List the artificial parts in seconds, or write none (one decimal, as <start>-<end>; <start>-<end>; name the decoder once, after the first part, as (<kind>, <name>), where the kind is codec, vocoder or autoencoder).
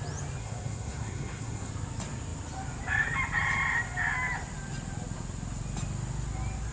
0.4-1.7 (codec, SNAC)